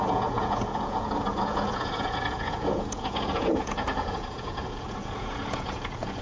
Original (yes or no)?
no